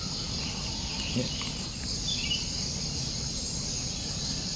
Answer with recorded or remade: recorded